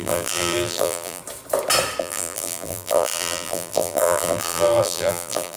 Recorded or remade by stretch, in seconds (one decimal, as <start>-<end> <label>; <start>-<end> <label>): 0.0-1.2 remade; 1.2-2.0 recorded; 2.0-5.6 remade